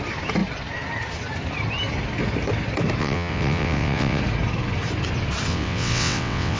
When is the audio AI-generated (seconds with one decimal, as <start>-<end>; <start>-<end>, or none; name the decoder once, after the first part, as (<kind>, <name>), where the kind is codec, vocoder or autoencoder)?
3.0-4.2 (vocoder, WaveNeXt); 5.5-6.6